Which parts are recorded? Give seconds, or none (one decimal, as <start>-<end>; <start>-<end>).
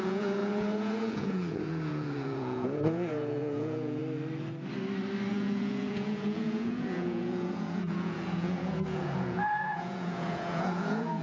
4.0-5.3